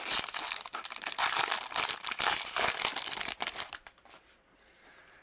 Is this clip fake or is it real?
fake